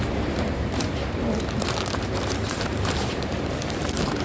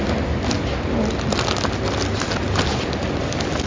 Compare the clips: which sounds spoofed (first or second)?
first